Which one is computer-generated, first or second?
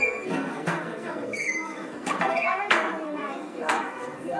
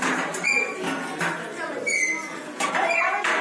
first